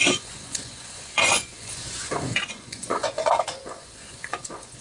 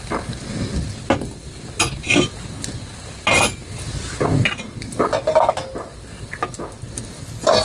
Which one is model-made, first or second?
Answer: first